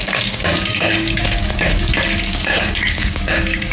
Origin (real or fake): fake